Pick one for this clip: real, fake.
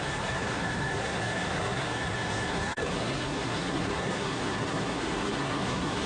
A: fake